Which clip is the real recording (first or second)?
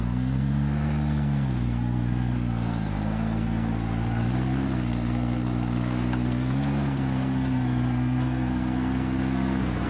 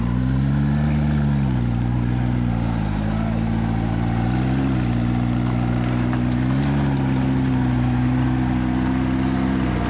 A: second